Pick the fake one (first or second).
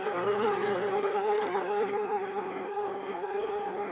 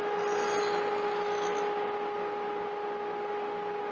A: first